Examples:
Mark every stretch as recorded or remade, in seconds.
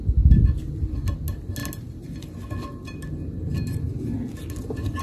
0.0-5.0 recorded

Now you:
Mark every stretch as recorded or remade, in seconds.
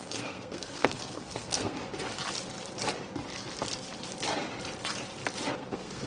0.0-1.8 remade; 1.8-5.5 recorded; 5.5-6.1 remade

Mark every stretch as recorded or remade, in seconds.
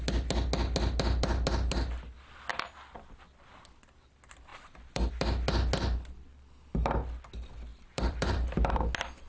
0.0-2.5 recorded; 2.5-3.2 remade; 3.2-4.5 recorded; 4.5-5.1 remade; 5.1-7.7 recorded; 7.7-8.7 remade; 8.7-9.3 recorded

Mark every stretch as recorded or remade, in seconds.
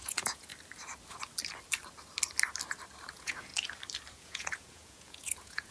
0.0-0.5 remade; 0.5-3.1 recorded; 3.1-3.5 remade; 3.5-4.1 recorded; 4.1-5.7 remade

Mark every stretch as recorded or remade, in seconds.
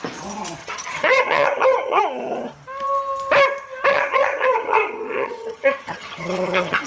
0.0-0.6 recorded; 0.6-2.0 remade; 2.0-3.9 recorded; 3.9-6.9 remade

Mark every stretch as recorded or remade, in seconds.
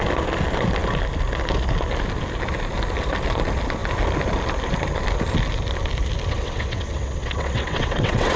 0.0-6.3 recorded; 6.3-8.4 remade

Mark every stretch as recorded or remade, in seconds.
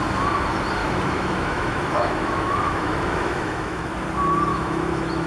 0.0-0.8 recorded; 0.8-3.9 remade; 3.9-4.5 recorded; 4.5-5.3 remade